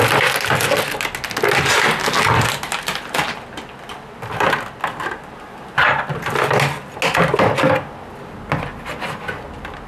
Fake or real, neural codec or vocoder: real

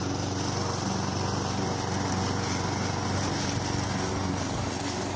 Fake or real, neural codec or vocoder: real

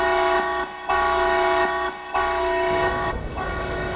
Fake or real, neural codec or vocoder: fake, autoencoder, DAC-VAE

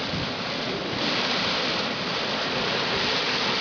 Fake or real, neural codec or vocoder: real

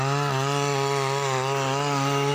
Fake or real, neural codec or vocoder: real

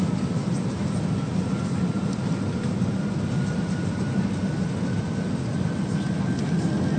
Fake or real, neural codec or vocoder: real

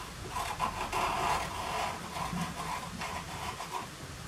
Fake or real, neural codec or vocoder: real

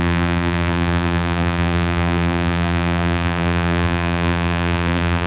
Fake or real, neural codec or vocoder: fake, vocoder, BigVGAN v2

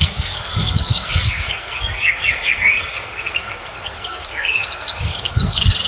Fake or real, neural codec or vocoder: fake, codec, SNAC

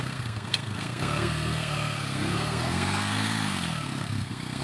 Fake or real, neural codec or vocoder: fake, codec, SNAC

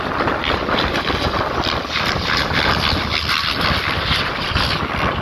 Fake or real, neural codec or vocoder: real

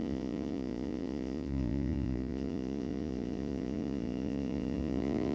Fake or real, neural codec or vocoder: fake, vocoder, Vocos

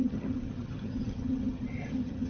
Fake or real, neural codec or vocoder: fake, vocoder, HiFi-GAN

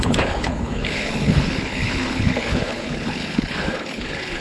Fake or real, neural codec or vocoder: fake, codec, HILCodec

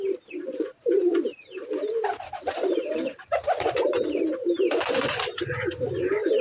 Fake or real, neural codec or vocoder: fake, vocoder, BigVGAN v2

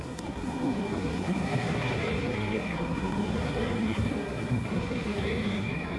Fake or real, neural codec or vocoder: fake, codec, SNAC